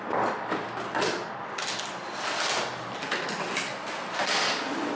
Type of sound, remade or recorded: recorded